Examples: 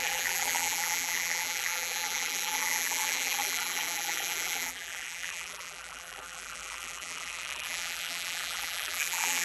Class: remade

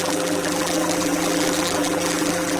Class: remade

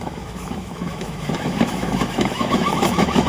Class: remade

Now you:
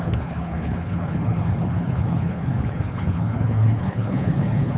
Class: remade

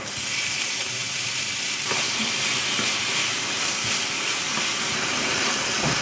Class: remade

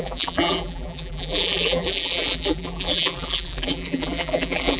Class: remade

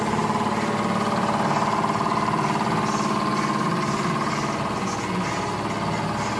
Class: recorded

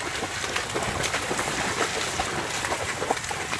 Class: recorded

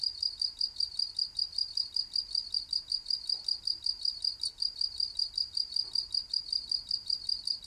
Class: recorded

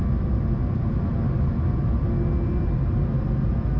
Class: recorded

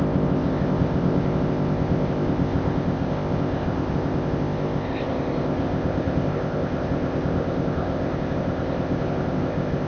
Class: remade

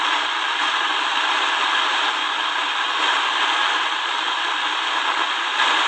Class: remade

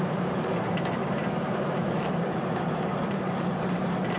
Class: remade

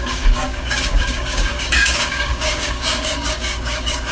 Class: remade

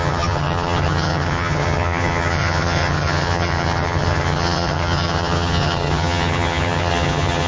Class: remade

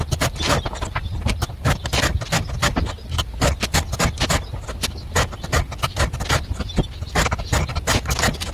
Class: recorded